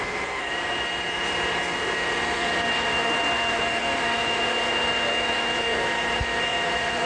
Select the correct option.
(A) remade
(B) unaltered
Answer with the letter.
B